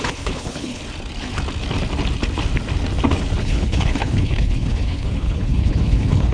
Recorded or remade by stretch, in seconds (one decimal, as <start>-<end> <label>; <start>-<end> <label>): 0.0-0.8 remade; 0.8-3.4 recorded; 3.4-6.3 remade